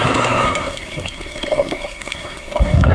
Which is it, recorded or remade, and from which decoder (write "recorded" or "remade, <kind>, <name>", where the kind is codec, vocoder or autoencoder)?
remade, codec, SNAC